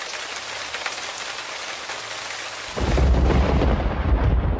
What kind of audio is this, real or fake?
real